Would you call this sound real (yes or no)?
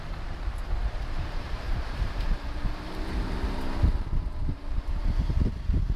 no